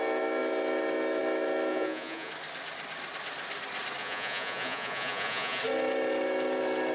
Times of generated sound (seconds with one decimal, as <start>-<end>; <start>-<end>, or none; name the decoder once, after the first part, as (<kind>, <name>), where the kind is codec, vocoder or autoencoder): 1.7-2.3 (vocoder, Vocos); 4.0-5.6